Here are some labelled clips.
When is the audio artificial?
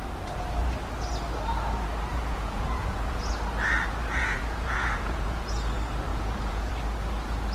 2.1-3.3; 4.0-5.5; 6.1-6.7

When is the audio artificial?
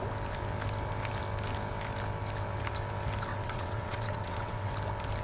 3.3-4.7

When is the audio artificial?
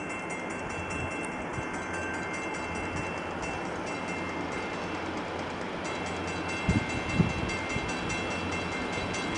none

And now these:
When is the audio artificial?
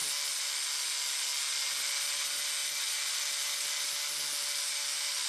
none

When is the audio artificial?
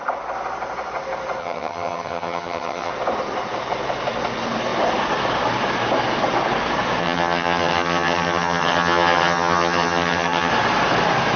1.4-2.9; 7.0-10.5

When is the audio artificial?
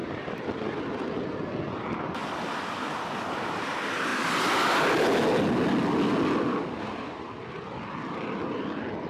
0.0-0.8; 2.2-2.8